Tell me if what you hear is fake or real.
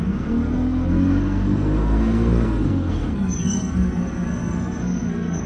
fake